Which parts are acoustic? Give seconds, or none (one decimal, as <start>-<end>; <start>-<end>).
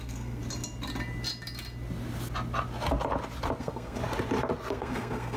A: 0.4-3.6; 4.0-4.7